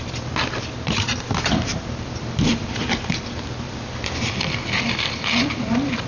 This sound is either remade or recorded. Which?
remade